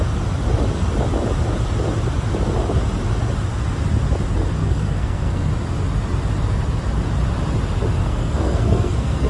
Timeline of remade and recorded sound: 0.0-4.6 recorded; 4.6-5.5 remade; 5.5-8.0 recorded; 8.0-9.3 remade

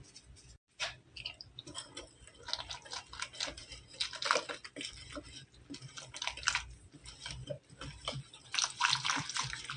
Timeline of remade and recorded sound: 0.0-9.8 recorded

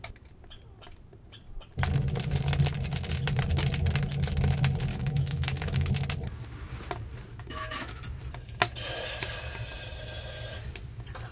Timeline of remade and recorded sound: 0.0-4.9 recorded; 4.9-5.9 remade; 5.9-7.3 recorded; 7.3-8.0 remade; 8.0-11.3 recorded

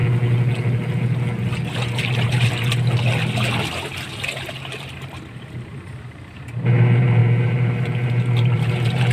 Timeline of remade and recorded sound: 0.0-4.5 recorded; 4.5-9.1 remade

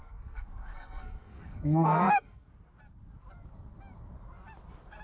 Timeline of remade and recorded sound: 0.0-2.5 remade; 2.5-5.0 recorded

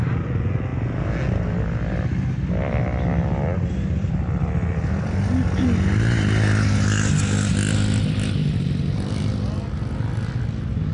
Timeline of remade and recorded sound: 0.0-10.9 recorded

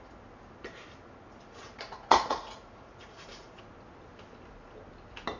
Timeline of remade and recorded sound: 0.0-1.3 recorded; 1.3-3.6 remade; 3.6-5.4 recorded